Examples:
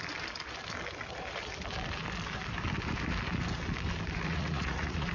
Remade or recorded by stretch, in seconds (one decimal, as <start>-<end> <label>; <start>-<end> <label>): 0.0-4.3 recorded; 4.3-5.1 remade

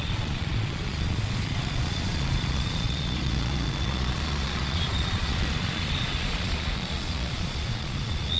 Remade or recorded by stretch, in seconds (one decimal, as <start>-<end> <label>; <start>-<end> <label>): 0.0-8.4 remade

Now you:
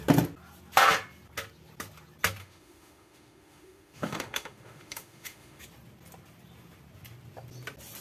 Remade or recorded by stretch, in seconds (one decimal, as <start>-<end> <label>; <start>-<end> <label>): 0.0-2.4 recorded; 2.4-5.6 remade; 5.6-8.0 recorded

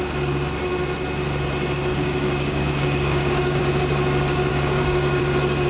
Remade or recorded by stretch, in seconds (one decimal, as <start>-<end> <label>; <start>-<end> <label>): 0.0-1.9 recorded; 1.9-3.6 remade; 3.6-4.5 recorded; 4.5-5.2 remade; 5.2-5.7 recorded